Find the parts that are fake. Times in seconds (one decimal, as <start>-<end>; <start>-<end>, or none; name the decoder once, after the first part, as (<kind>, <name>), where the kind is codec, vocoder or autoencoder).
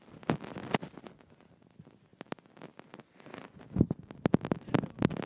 none